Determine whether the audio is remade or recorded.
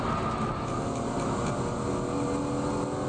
recorded